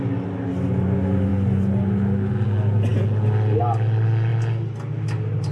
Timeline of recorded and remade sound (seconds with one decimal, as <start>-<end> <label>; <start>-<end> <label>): 0.0-5.5 recorded